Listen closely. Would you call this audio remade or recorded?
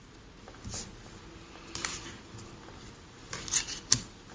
recorded